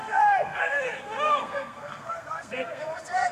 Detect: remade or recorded remade